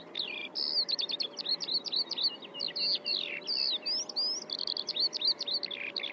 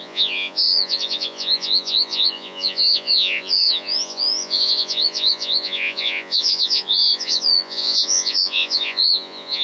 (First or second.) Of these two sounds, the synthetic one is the second